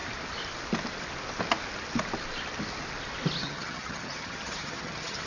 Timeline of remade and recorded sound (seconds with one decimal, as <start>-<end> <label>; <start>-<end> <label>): 0.0-3.4 recorded; 3.4-5.3 remade